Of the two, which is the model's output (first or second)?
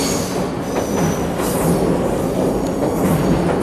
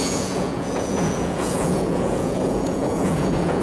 second